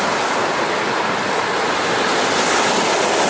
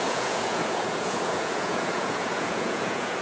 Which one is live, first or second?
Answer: first